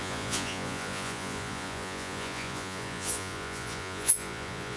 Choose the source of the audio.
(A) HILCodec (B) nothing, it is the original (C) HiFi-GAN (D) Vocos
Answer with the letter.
D